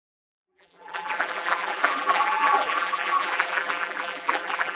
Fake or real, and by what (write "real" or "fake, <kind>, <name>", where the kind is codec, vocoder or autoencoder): fake, vocoder, BigVGAN v2